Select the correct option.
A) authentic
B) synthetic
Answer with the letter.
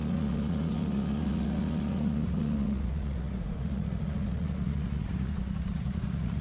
B